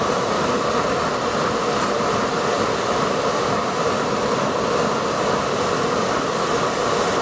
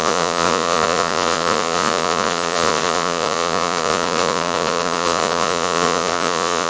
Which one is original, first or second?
first